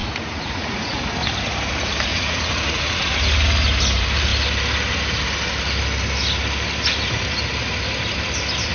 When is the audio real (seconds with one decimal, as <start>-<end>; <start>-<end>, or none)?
1.0-2.1; 3.0-8.7